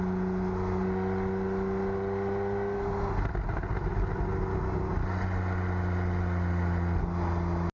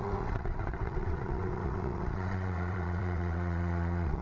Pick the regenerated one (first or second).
second